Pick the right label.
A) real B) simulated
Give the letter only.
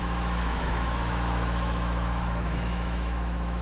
B